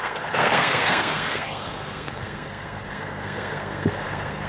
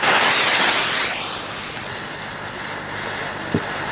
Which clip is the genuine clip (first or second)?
second